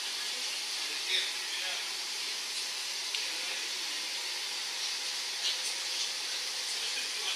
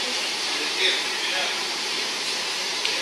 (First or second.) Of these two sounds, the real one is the first